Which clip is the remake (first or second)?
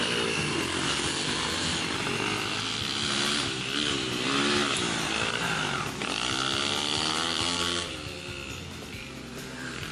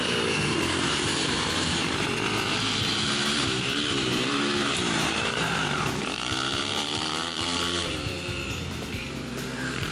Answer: second